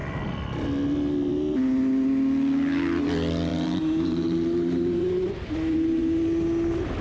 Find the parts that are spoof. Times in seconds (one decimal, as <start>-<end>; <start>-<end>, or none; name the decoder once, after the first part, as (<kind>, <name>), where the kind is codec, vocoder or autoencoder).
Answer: 3.5-6.0 (vocoder, BigVGAN v2)